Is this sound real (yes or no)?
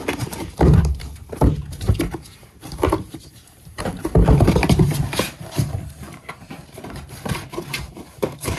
no